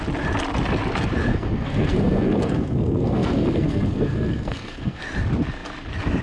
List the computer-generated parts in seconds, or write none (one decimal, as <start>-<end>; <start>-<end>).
1.3-5.0

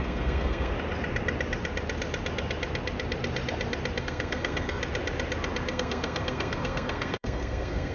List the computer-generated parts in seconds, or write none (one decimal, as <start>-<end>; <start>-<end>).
0.0-0.7; 4.0-4.8; 5.7-7.9